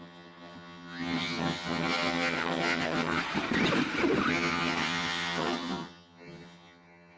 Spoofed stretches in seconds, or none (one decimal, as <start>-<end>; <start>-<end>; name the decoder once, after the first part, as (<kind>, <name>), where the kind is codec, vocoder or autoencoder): 0.0-3.2 (vocoder, HiFi-GAN); 4.3-7.2